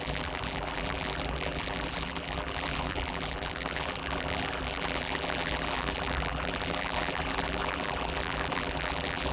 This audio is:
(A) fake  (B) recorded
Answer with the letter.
A